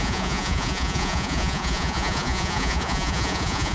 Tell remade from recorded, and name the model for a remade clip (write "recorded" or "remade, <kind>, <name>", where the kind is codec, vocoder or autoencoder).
remade, vocoder, Vocos